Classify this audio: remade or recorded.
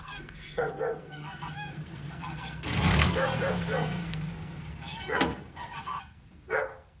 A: remade